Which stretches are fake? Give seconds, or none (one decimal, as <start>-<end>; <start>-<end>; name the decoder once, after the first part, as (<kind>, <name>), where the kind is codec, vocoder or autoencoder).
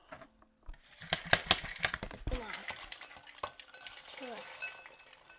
none